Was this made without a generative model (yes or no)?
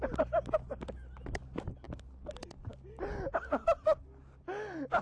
yes